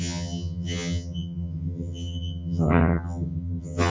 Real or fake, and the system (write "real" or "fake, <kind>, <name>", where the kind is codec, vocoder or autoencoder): fake, vocoder, HiFi-GAN